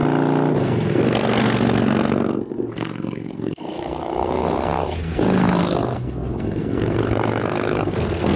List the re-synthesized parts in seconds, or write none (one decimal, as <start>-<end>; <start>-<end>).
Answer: 0.6-8.4